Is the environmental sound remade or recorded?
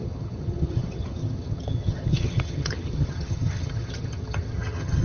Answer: remade